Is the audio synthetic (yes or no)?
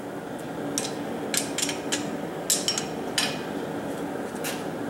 no